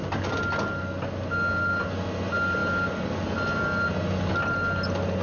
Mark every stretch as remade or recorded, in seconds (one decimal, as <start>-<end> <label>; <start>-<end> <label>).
0.0-5.2 recorded